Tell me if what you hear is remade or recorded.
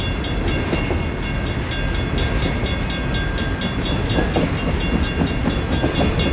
recorded